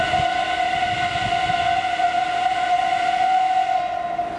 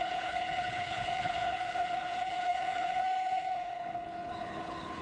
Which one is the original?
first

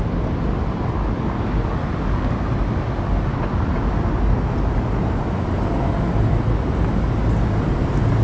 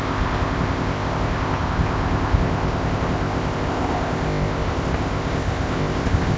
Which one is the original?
first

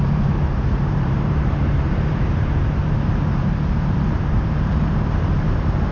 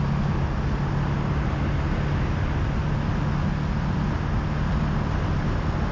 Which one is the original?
second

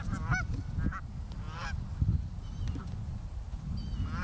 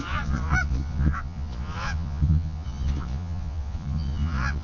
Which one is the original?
first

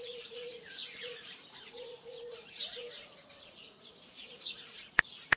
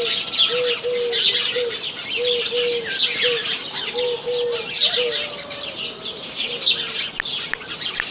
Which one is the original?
second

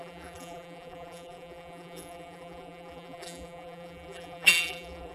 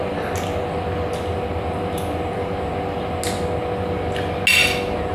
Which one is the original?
second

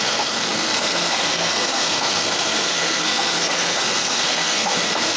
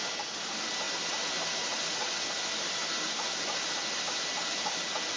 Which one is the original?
second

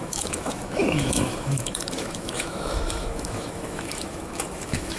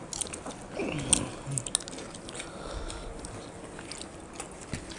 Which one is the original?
second